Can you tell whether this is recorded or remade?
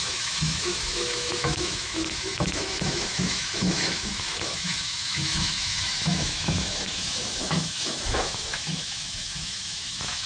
remade